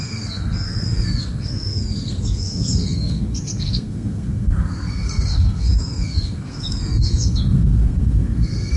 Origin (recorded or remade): remade